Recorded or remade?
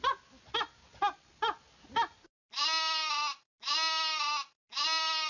recorded